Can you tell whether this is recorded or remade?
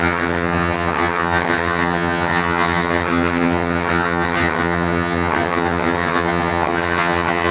remade